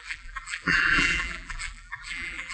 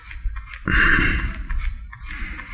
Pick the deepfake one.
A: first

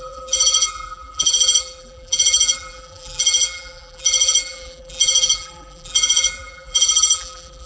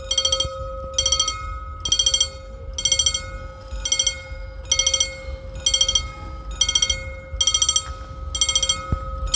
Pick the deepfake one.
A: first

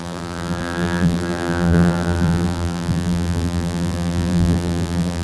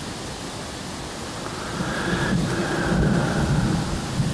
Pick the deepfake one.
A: first